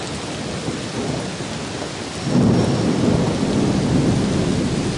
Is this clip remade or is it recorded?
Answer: recorded